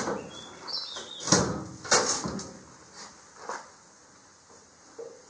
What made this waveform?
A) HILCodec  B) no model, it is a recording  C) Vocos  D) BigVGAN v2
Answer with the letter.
B